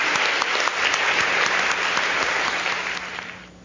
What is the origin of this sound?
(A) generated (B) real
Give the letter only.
B